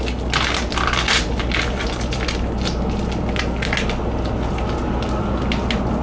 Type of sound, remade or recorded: recorded